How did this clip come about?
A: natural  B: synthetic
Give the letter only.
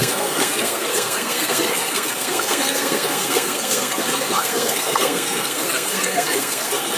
B